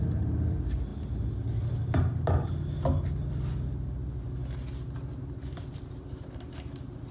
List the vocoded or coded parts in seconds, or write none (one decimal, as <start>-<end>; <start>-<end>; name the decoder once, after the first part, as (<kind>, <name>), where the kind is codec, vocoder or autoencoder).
0.0-0.9 (vocoder, BigVGAN v2); 5.2-7.1